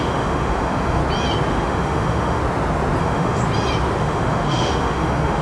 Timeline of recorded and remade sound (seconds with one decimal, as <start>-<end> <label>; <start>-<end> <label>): 0.0-1.0 remade; 1.0-1.5 recorded; 1.5-2.4 remade; 2.4-3.0 recorded; 3.0-3.4 remade; 3.4-4.0 recorded; 4.0-5.4 remade